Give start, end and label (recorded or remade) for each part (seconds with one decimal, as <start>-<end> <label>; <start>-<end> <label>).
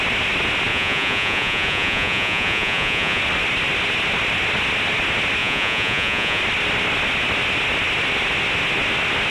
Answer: 0.0-0.7 recorded; 0.7-3.2 remade; 3.2-5.4 recorded; 5.4-6.4 remade; 6.4-9.3 recorded